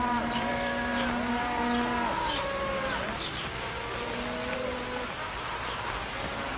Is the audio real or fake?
real